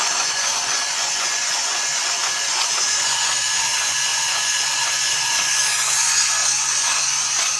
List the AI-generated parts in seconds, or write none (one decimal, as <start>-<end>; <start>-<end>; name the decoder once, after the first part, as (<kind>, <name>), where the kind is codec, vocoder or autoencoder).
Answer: 0.0-7.6 (vocoder, Vocos)